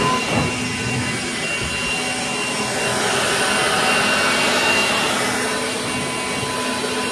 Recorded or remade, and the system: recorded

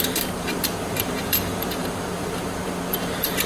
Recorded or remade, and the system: remade, vocoder, BigVGAN v2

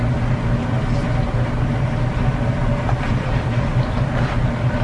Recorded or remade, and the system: recorded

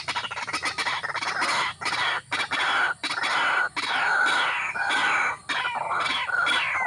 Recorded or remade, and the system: recorded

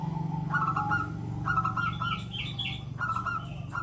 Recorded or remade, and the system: recorded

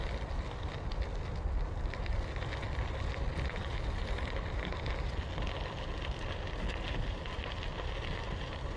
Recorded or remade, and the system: recorded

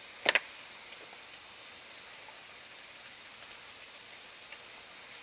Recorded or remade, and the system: recorded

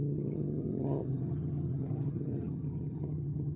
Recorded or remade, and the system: remade, vocoder, HiFi-GAN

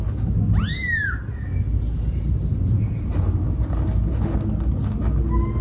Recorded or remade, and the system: recorded